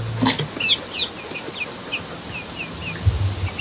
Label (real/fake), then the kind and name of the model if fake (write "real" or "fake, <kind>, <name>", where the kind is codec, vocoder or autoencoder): real